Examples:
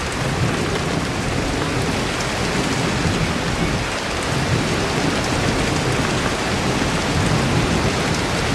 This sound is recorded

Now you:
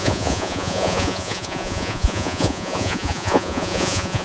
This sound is remade